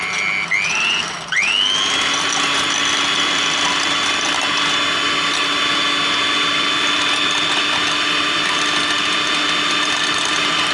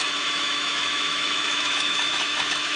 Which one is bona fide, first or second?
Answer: first